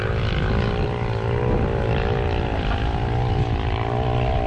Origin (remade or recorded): recorded